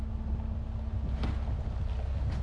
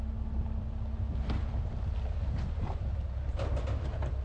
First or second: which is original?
first